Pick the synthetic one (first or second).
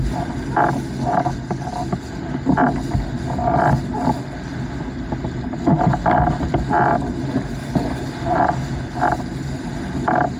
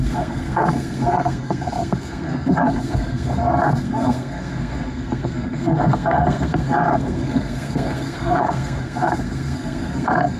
second